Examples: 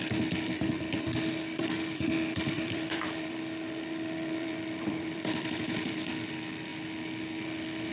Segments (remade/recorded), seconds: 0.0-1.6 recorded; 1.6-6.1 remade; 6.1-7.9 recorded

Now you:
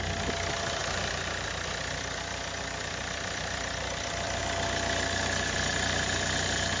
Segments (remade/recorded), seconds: 0.0-0.8 recorded; 0.8-4.4 remade; 4.4-6.8 recorded

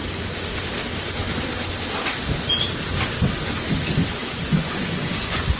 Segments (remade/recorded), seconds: 0.0-4.2 recorded; 4.2-5.6 remade